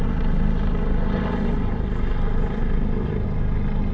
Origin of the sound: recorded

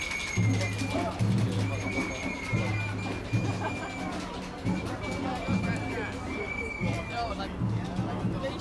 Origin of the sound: recorded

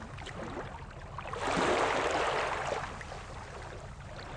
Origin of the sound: recorded